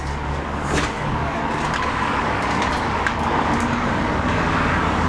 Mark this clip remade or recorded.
remade